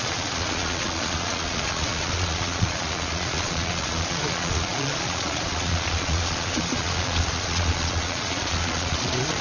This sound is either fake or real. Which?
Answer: fake